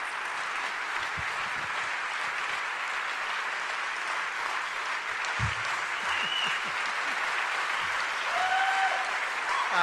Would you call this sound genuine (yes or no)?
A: yes